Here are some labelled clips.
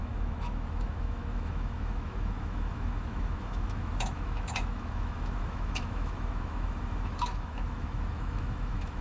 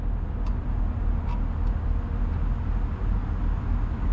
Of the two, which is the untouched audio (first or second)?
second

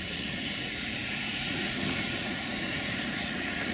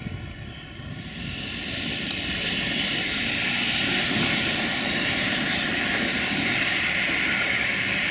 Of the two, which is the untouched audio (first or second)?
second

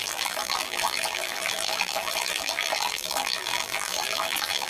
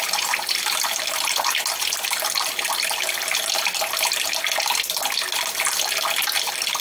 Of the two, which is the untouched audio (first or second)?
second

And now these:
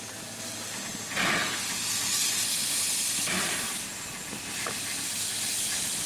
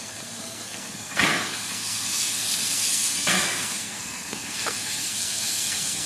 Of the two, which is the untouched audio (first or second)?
first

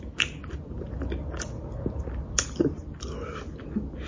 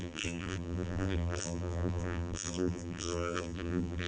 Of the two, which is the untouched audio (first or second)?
first